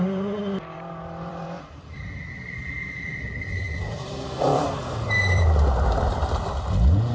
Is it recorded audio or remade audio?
remade